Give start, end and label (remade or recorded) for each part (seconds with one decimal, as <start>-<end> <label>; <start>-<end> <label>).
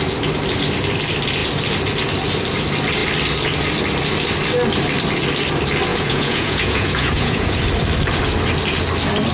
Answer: 0.0-5.9 recorded; 5.9-7.6 remade; 7.6-9.3 recorded